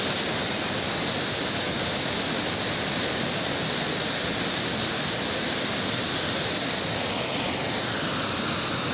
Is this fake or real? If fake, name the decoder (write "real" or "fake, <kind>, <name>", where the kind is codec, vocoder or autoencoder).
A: real